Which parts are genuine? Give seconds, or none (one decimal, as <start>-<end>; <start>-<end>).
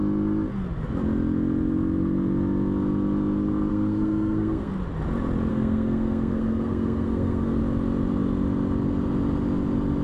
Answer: 0.0-3.7; 4.7-5.5; 7.6-10.0